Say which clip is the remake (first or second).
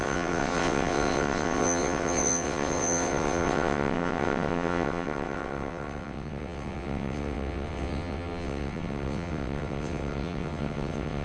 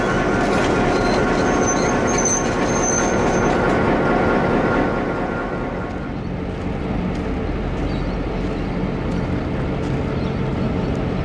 first